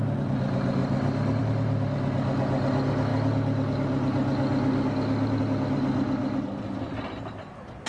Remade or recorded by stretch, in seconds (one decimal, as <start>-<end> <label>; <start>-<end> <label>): 0.0-7.9 recorded